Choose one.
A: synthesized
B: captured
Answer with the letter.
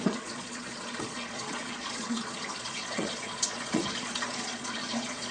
A